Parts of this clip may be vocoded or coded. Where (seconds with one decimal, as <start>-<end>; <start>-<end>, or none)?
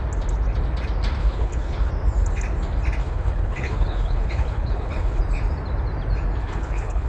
1.2-1.9; 3.0-5.2; 6.4-7.1